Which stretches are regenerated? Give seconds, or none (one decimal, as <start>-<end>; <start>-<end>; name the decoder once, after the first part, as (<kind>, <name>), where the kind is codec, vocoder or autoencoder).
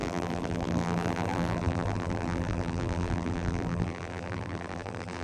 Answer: 0.0-5.2 (vocoder, BigVGAN v2)